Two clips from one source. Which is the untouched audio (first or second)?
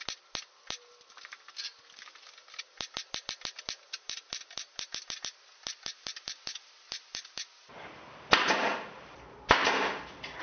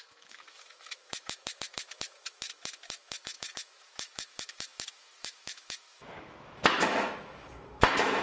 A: first